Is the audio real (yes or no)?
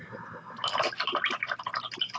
yes